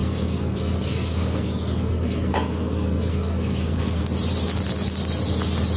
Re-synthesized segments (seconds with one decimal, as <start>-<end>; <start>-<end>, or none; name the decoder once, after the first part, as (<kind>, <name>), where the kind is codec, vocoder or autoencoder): 0.0-4.0 (codec, SNAC)